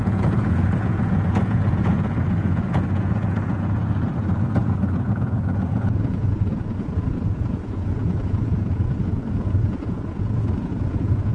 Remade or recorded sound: remade